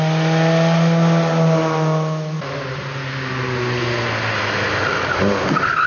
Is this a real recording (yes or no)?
yes